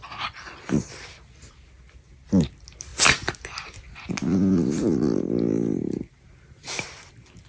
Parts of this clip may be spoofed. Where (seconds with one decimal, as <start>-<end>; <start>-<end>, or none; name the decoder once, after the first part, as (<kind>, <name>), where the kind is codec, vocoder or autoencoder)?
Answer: none